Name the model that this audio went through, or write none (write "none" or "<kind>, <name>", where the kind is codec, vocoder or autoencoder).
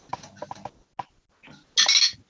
none